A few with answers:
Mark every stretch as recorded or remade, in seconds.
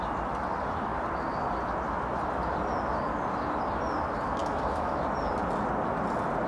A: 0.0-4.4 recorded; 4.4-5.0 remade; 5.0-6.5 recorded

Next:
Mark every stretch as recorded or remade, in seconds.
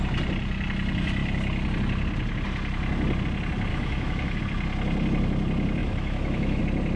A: 0.0-3.7 recorded; 3.7-4.4 remade; 4.4-5.8 recorded; 5.8-6.6 remade; 6.6-7.0 recorded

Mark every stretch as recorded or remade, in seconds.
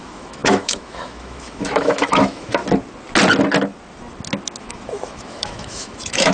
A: 0.0-2.6 remade; 2.6-4.6 recorded; 4.6-6.3 remade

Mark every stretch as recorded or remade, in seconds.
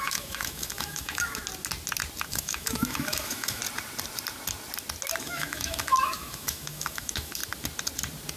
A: 0.0-1.4 remade; 1.4-2.3 recorded; 2.3-3.6 remade; 3.6-5.2 recorded; 5.2-7.4 remade; 7.4-8.4 recorded